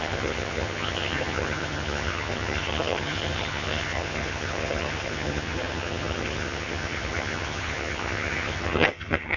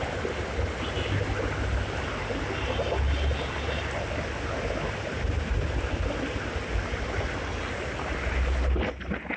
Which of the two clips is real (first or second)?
second